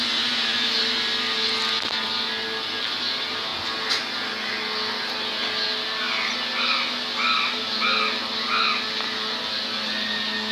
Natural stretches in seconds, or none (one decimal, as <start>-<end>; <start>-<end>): 0.0-10.5

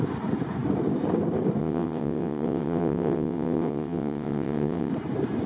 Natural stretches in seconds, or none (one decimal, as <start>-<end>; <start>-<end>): 0.0-1.6; 4.9-5.5

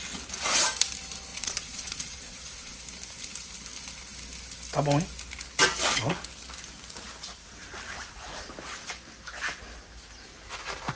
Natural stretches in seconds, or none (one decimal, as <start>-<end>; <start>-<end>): 0.0-1.3; 2.8-11.0

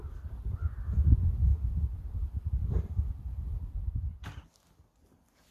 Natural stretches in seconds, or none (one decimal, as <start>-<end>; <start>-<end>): 0.0-1.5; 3.9-5.5